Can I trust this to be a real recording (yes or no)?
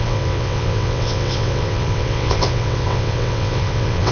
no